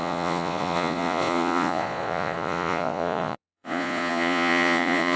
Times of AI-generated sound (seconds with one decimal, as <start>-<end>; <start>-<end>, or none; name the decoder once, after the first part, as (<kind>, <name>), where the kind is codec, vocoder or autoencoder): 0.0-5.2 (vocoder, Vocos)